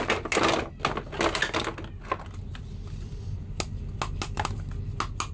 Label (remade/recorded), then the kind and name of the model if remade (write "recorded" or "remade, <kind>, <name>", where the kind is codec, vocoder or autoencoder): recorded